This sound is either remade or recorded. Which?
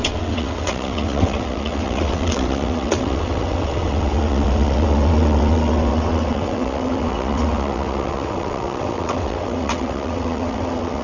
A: remade